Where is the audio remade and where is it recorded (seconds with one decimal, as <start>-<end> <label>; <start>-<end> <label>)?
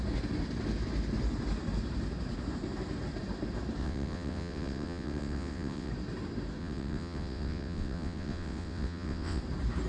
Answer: 0.0-3.8 recorded; 3.8-5.9 remade; 5.9-6.6 recorded; 6.6-9.4 remade; 9.4-9.9 recorded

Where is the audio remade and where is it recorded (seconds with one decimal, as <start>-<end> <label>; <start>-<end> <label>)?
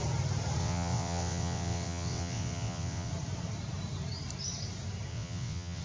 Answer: 0.0-0.6 recorded; 0.6-3.1 remade; 3.1-5.1 recorded; 5.1-5.8 remade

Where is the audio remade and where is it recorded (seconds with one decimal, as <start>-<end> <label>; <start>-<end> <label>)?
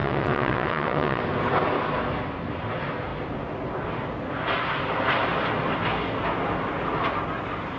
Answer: 0.0-1.2 remade; 1.2-7.8 recorded